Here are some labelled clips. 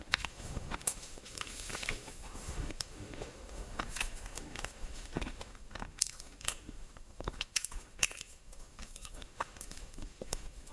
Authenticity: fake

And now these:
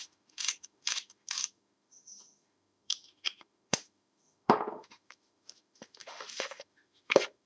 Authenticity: fake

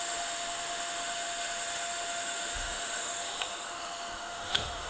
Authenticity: fake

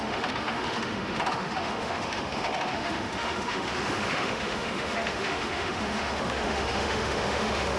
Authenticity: fake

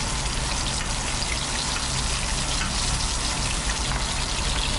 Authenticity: real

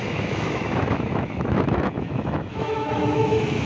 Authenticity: fake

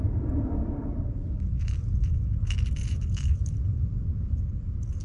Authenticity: real